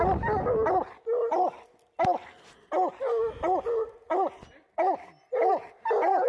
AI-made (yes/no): no